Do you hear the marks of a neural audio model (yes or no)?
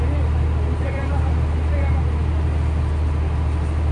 no